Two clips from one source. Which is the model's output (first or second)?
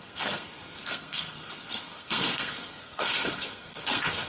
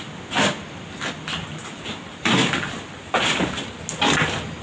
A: first